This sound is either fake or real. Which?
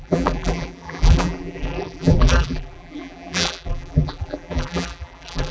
fake